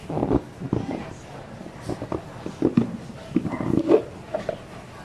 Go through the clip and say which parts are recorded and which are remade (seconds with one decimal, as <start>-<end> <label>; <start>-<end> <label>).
0.0-5.0 recorded